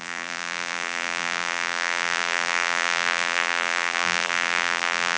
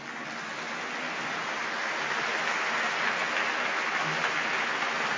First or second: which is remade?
first